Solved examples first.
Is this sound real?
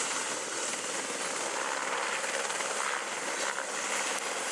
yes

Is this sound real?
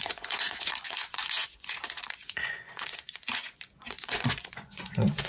no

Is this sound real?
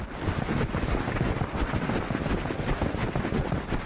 yes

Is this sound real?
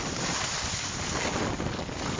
yes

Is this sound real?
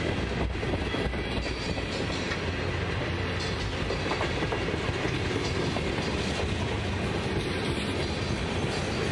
yes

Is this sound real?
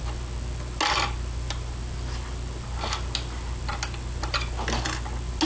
yes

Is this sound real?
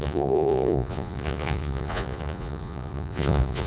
no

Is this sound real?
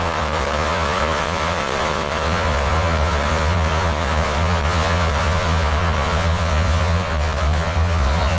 no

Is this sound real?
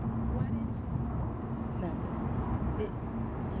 yes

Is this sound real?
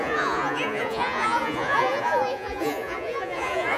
no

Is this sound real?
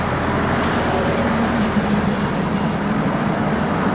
yes